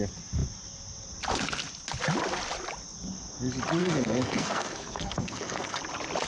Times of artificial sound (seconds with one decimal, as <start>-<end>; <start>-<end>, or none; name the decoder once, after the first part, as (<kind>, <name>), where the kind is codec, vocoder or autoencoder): 3.8-5.8 (codec, SNAC)